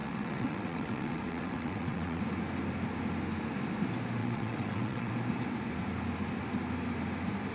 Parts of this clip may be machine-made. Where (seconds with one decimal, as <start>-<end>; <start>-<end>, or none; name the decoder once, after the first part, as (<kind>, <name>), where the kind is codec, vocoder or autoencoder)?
0.0-2.2 (vocoder, WaveNeXt); 4.2-5.1

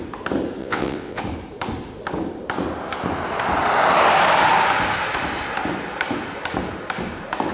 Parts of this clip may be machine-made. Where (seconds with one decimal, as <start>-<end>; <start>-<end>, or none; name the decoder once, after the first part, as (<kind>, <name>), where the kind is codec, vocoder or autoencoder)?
0.6-1.2 (vocoder, WaveNeXt)

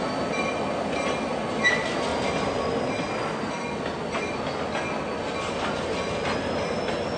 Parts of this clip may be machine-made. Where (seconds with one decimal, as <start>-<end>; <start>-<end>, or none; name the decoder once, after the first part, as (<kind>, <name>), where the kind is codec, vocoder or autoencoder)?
none

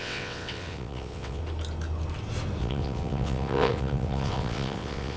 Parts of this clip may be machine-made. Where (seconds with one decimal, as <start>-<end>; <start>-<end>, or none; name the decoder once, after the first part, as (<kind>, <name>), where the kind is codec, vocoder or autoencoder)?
0.0-1.4 (vocoder, WaveNeXt); 2.6-5.2

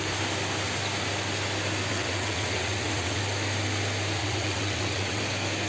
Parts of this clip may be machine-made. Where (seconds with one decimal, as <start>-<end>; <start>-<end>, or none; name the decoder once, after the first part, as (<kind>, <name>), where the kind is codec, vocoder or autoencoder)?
1.9-3.2 (vocoder, WaveNeXt); 4.2-5.2